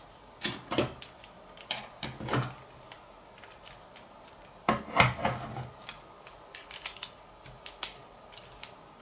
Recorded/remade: recorded